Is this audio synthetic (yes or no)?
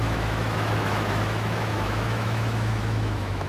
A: yes